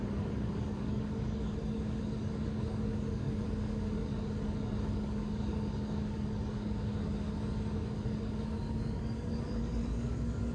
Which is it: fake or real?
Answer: fake